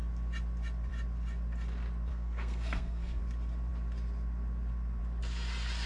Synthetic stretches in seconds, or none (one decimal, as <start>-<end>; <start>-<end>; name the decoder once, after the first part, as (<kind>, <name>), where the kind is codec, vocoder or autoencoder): 2.1-3.2 (codec, SNAC)